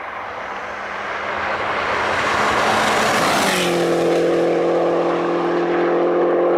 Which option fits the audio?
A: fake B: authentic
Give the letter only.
B